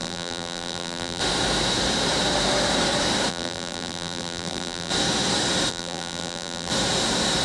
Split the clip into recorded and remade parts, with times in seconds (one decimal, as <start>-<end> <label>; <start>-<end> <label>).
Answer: 0.0-1.2 remade; 1.2-3.3 recorded; 3.3-4.9 remade; 4.9-5.7 recorded; 5.7-6.7 remade; 6.7-7.4 recorded

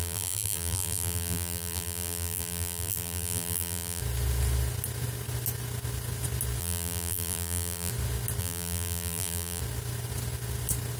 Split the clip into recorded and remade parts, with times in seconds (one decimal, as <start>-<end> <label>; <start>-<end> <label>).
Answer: 0.0-4.0 remade; 4.0-6.6 recorded; 6.6-7.9 remade; 7.9-8.4 recorded; 8.4-9.6 remade; 9.6-11.0 recorded